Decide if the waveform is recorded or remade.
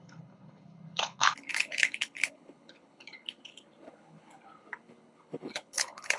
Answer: remade